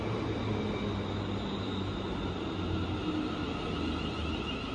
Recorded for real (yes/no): yes